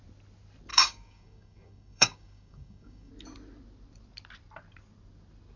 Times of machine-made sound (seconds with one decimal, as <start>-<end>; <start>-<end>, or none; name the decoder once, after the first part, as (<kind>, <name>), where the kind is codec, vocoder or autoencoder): 0.7-3.1 (codec, DAC)